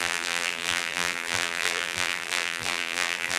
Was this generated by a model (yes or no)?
yes